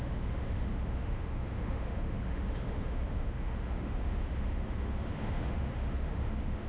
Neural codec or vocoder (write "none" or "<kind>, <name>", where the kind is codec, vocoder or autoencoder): autoencoder, DAC-VAE